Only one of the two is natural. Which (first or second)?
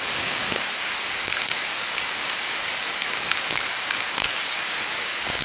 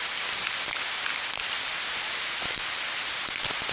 second